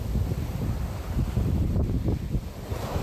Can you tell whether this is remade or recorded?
remade